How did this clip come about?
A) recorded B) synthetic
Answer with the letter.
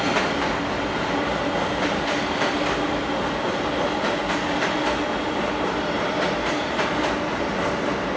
A